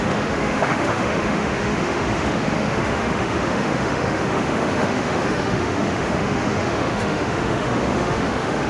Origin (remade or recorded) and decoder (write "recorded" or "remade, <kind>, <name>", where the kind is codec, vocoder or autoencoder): remade, autoencoder, DAC-VAE